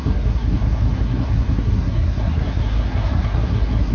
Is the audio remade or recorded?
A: remade